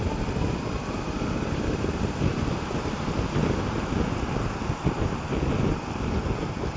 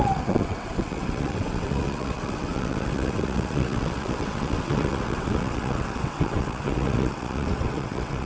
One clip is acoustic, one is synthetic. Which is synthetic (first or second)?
second